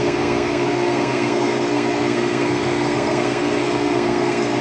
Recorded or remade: remade